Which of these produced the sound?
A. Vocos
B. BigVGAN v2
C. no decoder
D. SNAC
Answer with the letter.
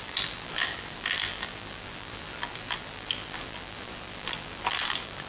B